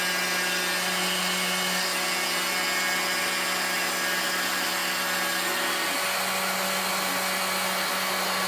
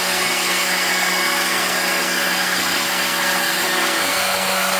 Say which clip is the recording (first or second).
first